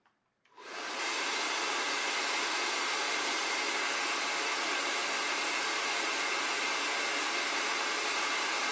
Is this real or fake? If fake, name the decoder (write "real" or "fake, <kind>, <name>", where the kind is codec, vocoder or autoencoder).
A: real